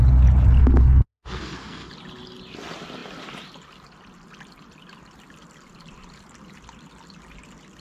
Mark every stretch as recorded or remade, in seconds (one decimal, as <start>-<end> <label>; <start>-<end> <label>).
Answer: 0.0-0.6 recorded; 0.6-1.9 remade; 1.9-7.8 recorded